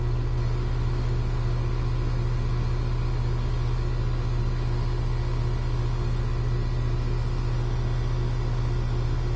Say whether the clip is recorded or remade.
recorded